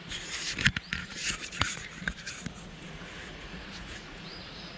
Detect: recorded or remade remade